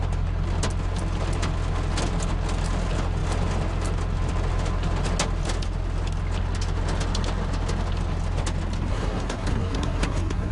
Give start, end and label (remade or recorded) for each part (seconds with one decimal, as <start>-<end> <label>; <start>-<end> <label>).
0.0-8.9 recorded; 8.9-10.5 remade